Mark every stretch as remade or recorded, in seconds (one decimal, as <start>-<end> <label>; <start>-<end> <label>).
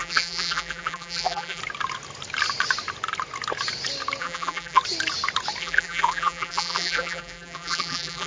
0.0-1.6 remade; 1.6-4.2 recorded; 4.2-4.8 remade; 4.8-5.6 recorded; 5.6-8.3 remade